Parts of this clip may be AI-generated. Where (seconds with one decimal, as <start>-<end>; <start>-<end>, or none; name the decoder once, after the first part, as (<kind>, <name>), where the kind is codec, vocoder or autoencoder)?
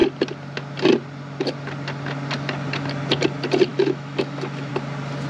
3.7-4.7 (autoencoder, DAC-VAE)